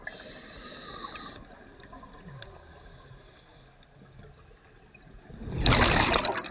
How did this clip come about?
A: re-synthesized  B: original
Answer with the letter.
B